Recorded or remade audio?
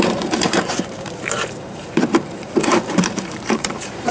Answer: remade